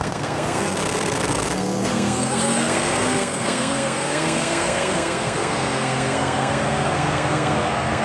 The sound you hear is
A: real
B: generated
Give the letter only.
B